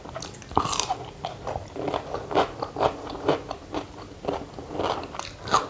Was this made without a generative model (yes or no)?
yes